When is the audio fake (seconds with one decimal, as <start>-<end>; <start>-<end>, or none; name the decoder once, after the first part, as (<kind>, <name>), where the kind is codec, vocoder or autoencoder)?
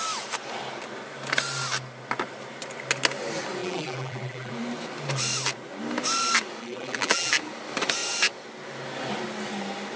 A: 3.6-4.5 (vocoder, BigVGAN v2); 6.6-7.3